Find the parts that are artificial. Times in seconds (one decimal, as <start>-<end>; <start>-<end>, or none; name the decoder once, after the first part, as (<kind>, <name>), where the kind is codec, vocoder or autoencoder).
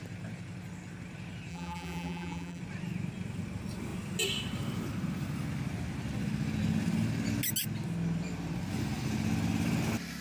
1.5-2.6 (vocoder, BigVGAN v2)